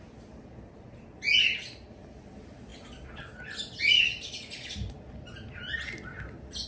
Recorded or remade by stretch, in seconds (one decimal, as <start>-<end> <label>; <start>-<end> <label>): 0.0-6.7 recorded